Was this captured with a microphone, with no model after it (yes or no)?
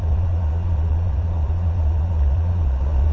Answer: no